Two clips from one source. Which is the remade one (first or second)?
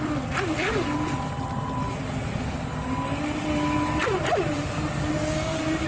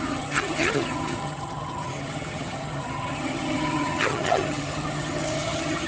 second